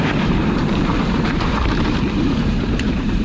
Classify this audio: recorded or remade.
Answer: remade